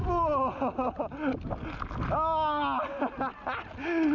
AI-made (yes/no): no